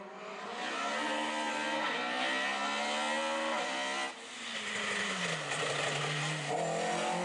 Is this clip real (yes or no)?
yes